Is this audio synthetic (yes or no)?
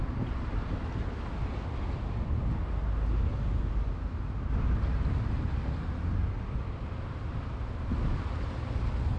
no